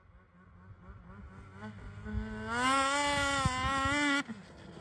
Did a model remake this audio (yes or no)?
no